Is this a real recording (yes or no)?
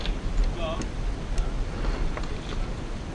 yes